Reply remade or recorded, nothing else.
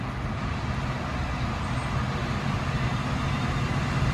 recorded